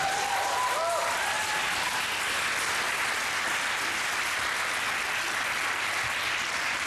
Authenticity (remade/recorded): recorded